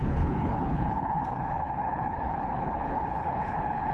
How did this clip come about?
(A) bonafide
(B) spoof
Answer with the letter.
B